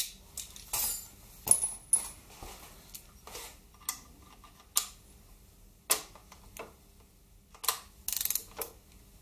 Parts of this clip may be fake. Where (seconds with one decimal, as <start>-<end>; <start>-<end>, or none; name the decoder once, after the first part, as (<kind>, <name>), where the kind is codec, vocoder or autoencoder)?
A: none